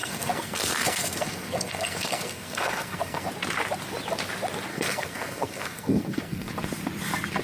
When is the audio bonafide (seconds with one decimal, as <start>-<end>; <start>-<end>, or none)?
3.3-4.7; 6.5-7.4